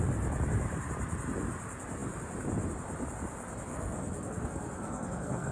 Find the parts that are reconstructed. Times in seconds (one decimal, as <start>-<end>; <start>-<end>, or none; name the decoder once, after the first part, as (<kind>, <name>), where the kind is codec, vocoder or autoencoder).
3.7-5.5 (codec, SNAC)